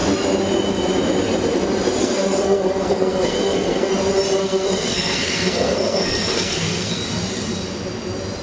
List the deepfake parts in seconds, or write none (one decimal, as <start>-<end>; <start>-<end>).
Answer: 2.0-3.9; 4.4-7.0